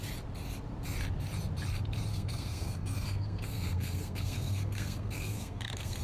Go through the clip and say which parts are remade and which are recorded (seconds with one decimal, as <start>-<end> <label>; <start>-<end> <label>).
0.0-2.1 recorded; 2.1-6.0 remade